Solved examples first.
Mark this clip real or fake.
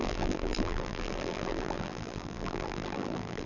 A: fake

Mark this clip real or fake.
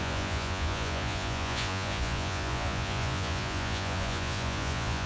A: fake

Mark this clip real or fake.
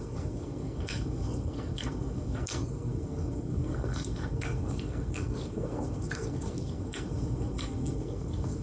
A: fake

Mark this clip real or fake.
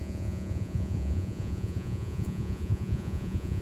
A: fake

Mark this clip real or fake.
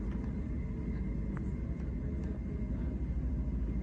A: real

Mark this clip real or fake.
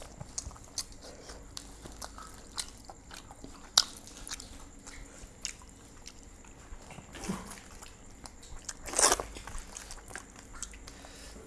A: real